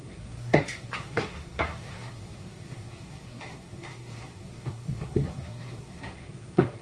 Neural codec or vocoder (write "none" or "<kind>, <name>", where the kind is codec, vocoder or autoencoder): codec, SNAC